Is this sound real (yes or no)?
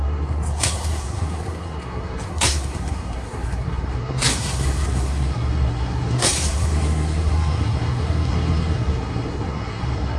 no